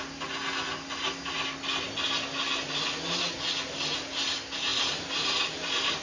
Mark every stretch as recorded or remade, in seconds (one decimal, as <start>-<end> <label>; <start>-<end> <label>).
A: 0.0-4.7 recorded; 4.7-6.0 remade